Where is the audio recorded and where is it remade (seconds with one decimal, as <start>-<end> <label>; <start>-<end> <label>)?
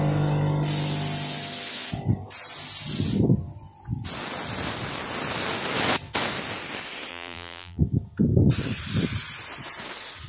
0.0-7.1 recorded; 7.1-7.8 remade; 7.8-10.3 recorded